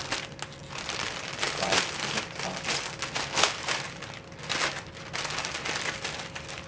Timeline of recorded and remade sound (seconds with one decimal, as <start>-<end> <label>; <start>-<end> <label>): 0.0-6.7 recorded